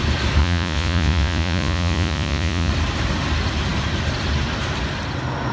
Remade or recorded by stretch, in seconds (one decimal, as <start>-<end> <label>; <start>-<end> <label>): 0.0-0.4 recorded; 0.4-2.7 remade; 2.7-5.5 recorded